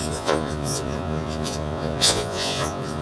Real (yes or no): no